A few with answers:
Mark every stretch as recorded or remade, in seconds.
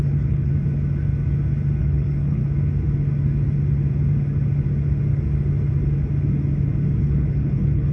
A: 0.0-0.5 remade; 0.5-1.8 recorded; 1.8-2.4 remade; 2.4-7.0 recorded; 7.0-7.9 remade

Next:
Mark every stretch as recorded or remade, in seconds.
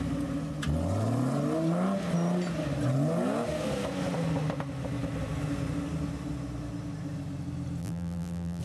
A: 0.0-7.8 recorded; 7.8-8.6 remade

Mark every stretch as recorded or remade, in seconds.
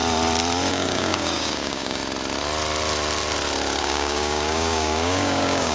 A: 0.0-0.7 recorded; 0.7-2.0 remade; 2.0-3.8 recorded; 3.8-5.7 remade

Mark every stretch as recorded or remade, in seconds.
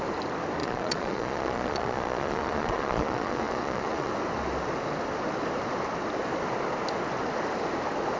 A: 0.0-0.6 recorded; 0.6-4.1 remade; 4.1-8.2 recorded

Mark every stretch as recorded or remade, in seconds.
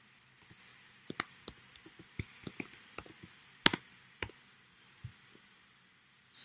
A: 0.0-6.4 recorded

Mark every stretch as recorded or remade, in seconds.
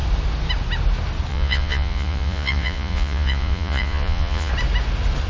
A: 0.0-1.3 recorded; 1.3-4.5 remade; 4.5-5.3 recorded